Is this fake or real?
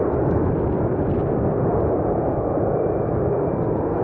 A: real